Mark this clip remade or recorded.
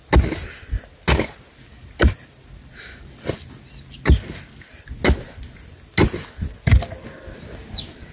recorded